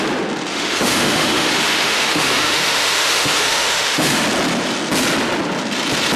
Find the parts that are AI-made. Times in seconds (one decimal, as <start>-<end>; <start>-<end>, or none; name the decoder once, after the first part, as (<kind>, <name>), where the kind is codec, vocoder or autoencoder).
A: 0.5-4.2 (autoencoder, DAC-VAE)